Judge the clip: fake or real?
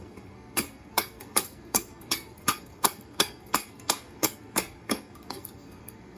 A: fake